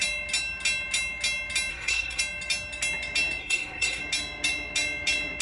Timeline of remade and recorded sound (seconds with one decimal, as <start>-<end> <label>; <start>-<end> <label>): 0.0-1.7 recorded; 1.7-2.2 remade; 2.2-3.4 recorded; 3.4-4.0 remade; 4.0-5.4 recorded